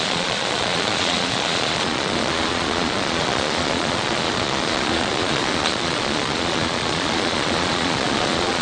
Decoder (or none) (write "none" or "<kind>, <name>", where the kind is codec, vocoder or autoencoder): vocoder, Vocos